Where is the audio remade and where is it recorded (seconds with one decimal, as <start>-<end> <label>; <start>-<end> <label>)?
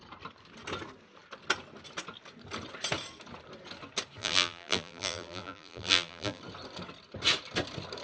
0.0-4.2 recorded; 4.2-6.4 remade; 6.4-8.0 recorded